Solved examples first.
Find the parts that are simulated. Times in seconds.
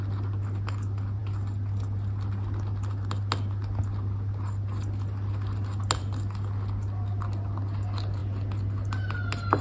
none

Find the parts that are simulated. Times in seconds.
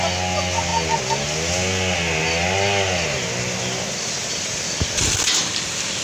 none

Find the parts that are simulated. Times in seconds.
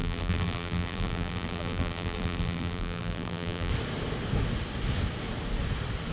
0.0-3.7 (vocoder, BigVGAN v2)